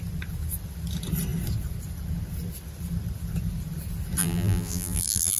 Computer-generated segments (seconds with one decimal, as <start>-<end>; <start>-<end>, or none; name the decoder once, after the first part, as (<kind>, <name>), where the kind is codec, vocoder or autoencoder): 4.2-5.4 (vocoder, BigVGAN v2)